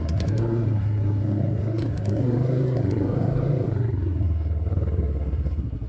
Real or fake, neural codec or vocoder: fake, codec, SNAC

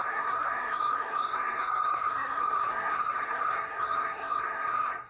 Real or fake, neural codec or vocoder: fake, codec, SNAC